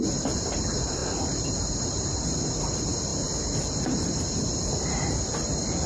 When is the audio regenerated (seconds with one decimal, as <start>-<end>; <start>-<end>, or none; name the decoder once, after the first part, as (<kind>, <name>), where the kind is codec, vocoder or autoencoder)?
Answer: 0.0-3.1 (vocoder, BigVGAN v2); 3.8-5.9